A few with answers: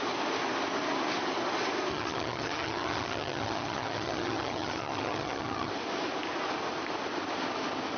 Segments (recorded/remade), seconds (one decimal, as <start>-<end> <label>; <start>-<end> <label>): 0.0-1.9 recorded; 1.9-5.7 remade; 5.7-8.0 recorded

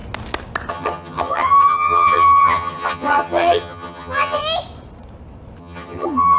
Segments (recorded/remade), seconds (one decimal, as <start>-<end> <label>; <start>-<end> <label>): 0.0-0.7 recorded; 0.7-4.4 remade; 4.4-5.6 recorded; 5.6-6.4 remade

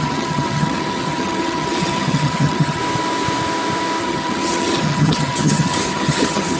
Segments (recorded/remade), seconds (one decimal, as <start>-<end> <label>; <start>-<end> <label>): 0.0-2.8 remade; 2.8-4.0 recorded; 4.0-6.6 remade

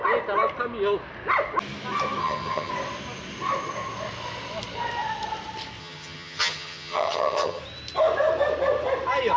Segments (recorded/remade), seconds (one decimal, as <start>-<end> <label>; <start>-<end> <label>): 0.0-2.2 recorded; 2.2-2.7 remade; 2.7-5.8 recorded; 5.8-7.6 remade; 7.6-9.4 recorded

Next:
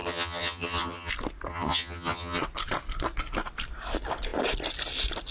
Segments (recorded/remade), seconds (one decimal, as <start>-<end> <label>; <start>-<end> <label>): 0.0-1.1 remade; 1.1-1.5 recorded; 1.5-2.4 remade; 2.4-5.3 recorded